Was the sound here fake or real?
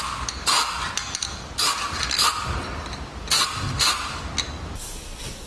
real